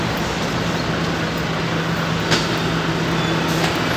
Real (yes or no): yes